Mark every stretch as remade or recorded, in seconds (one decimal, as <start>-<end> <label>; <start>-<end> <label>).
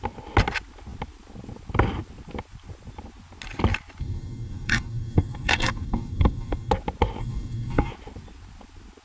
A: 0.0-4.0 recorded; 4.0-6.7 remade; 6.7-7.2 recorded; 7.2-7.9 remade; 7.9-9.0 recorded